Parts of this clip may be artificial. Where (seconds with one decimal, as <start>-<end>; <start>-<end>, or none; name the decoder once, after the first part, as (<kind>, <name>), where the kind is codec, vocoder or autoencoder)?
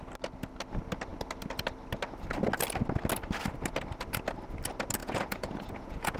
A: 5.0-6.2 (vocoder, Vocos)